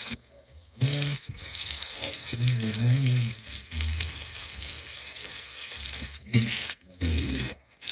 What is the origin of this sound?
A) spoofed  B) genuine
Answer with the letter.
A